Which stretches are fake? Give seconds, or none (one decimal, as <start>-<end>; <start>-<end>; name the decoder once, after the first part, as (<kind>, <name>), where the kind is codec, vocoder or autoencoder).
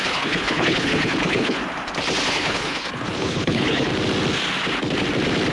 0.0-1.6 (codec, HILCodec); 2.3-3.9